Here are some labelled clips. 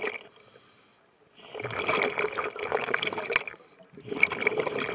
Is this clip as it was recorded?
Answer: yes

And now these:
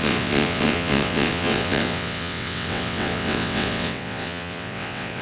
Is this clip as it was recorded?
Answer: no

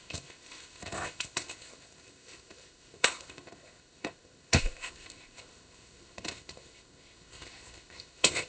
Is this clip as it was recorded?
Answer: no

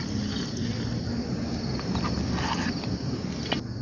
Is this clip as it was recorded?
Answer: yes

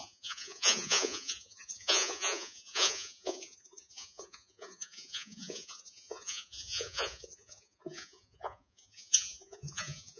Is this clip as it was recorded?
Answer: no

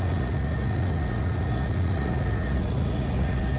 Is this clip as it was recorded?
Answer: no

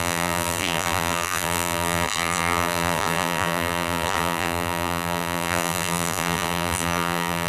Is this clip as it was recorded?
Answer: no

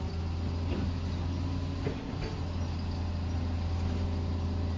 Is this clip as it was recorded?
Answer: yes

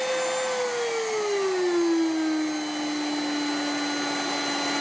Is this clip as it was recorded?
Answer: yes